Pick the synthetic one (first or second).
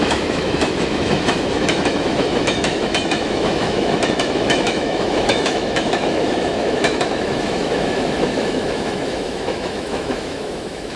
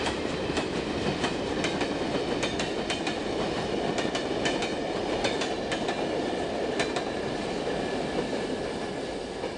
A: first